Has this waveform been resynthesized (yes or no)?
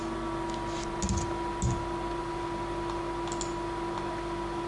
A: no